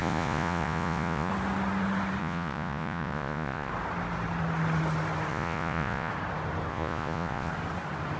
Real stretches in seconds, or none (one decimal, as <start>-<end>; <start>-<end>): 1.3-2.2; 3.7-5.3; 6.1-6.7; 7.5-8.2